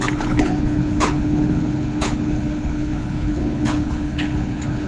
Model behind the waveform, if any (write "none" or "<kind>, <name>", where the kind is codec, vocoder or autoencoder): codec, HILCodec